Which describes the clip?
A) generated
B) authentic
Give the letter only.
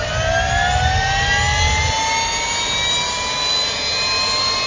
B